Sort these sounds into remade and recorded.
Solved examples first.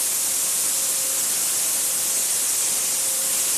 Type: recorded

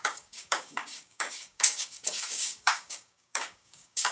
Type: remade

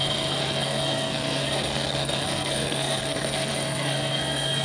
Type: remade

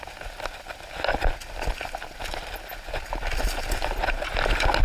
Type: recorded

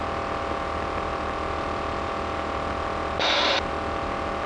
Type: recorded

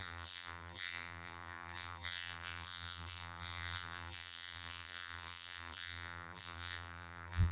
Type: remade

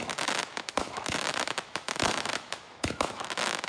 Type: remade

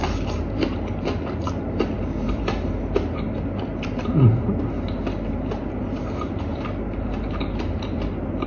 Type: recorded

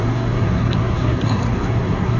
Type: remade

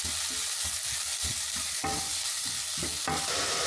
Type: recorded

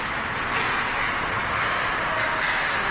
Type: recorded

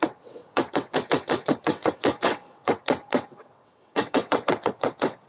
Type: remade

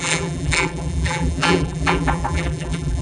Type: remade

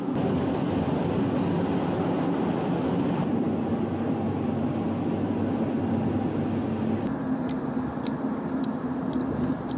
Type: recorded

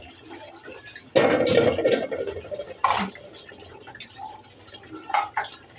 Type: recorded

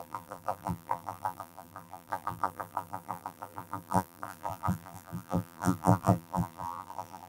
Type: remade